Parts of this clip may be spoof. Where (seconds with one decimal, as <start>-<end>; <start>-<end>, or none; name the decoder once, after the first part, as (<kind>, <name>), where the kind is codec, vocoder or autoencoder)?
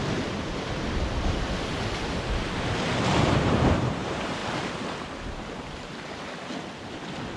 3.5-4.4 (vocoder, BigVGAN v2)